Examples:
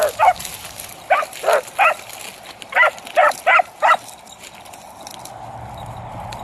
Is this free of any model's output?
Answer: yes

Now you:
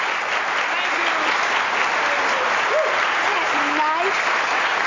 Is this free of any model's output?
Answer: yes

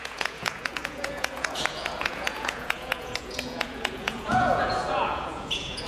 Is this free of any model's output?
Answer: no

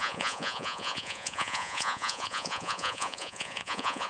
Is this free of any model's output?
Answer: no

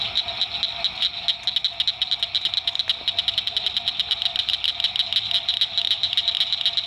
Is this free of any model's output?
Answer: yes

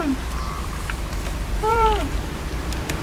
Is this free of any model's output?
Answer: no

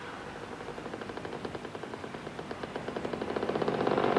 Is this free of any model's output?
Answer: no